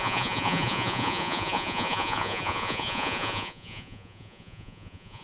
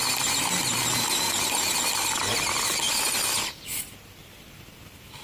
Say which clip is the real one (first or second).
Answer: second